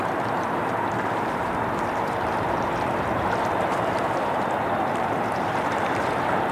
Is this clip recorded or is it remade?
remade